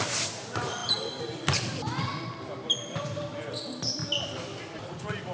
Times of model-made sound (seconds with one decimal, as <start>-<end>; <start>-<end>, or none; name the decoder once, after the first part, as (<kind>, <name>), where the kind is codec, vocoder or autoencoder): 0.0-5.3 (vocoder, BigVGAN v2)